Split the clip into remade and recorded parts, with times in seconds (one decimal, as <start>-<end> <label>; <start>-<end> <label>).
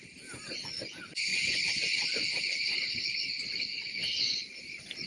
0.0-5.1 recorded